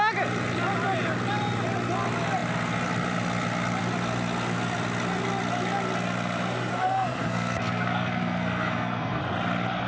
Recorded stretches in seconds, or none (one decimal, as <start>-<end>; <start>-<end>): 0.0-6.7; 9.2-9.9